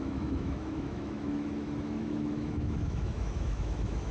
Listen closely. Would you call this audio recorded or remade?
remade